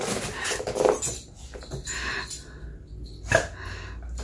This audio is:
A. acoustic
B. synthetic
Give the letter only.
A